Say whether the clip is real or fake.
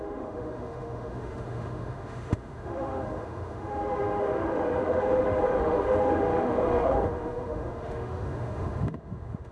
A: fake